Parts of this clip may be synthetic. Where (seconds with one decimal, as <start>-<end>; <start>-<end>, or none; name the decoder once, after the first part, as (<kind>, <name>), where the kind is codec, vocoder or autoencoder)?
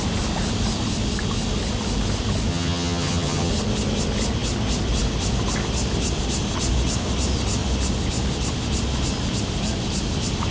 2.5-3.5 (vocoder, HiFi-GAN)